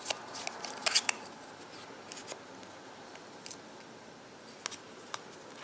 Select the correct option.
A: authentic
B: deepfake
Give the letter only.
A